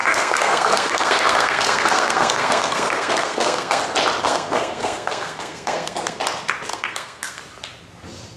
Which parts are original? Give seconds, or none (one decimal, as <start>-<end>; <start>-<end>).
3.8-4.2; 6.2-6.7; 7.4-8.4